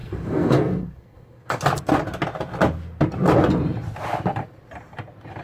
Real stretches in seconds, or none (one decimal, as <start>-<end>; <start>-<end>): 1.6-5.4

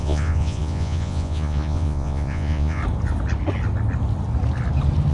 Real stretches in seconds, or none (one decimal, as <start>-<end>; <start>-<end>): 2.8-5.1

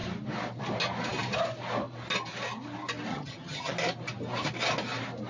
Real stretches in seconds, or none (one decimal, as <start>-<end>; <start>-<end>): 0.0-3.1; 3.7-5.3

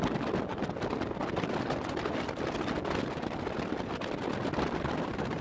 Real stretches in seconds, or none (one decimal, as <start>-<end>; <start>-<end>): 0.0-5.4

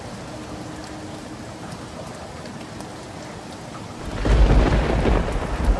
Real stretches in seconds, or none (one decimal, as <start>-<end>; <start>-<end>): 0.0-1.2; 2.7-5.8

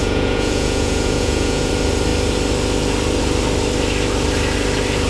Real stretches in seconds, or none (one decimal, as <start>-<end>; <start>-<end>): 1.7-5.1